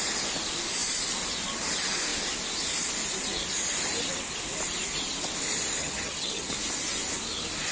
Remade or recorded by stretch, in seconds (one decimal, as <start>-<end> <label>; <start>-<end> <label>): 0.0-5.8 recorded; 5.8-6.5 remade; 6.5-7.7 recorded